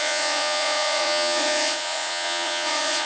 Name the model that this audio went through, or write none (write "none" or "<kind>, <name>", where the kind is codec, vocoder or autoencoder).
vocoder, Vocos